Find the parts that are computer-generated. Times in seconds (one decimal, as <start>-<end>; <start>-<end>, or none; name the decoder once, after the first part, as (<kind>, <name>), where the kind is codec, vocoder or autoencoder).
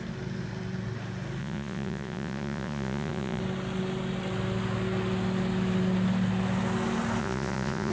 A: 1.4-3.4 (vocoder, Vocos); 7.2-7.9